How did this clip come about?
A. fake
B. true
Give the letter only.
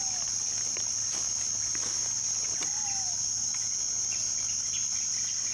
B